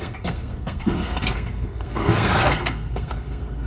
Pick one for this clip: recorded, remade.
remade